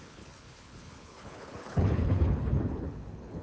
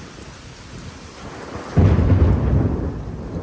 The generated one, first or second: first